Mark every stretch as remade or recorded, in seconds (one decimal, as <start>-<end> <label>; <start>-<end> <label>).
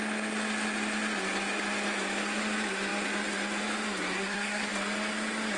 0.0-4.1 recorded; 4.1-4.7 remade; 4.7-5.6 recorded